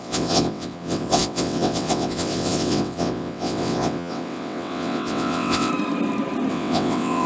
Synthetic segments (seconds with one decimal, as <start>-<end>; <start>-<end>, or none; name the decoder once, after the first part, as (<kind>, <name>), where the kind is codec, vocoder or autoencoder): 0.0-5.7 (vocoder, WaveNeXt); 6.5-7.3